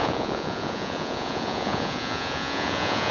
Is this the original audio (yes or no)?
no